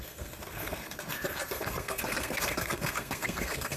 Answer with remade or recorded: remade